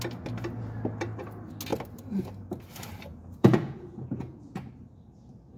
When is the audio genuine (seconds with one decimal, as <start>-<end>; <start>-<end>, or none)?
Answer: 0.0-3.1; 4.6-5.6